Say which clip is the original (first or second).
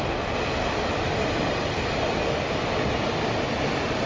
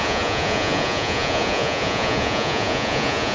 first